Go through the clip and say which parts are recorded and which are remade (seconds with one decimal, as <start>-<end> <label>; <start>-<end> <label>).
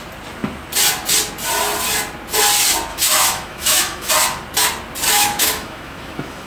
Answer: 0.0-2.9 recorded; 2.9-4.1 remade; 4.1-5.1 recorded; 5.1-6.5 remade